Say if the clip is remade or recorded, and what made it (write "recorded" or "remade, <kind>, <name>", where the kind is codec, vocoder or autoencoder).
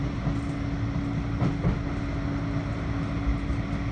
recorded